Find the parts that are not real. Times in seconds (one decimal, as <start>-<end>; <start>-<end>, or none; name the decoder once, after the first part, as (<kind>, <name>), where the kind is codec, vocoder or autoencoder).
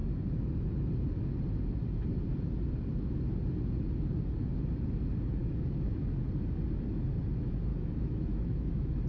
5.4-6.2 (autoencoder, DAC-VAE); 7.7-9.1